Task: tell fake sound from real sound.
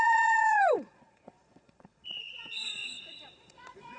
fake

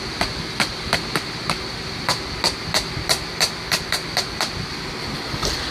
real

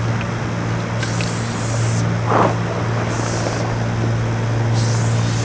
real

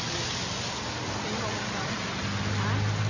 real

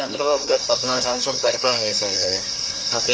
fake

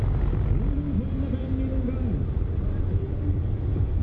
real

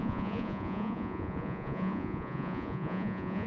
fake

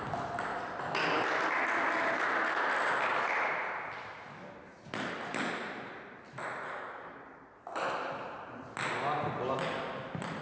real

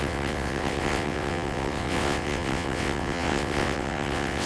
fake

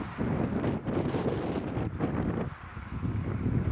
real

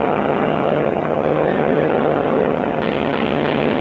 fake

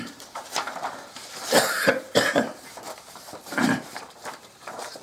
fake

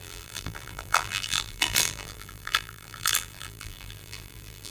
fake